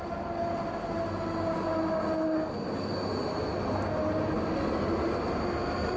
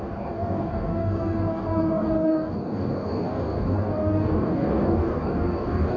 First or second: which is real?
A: first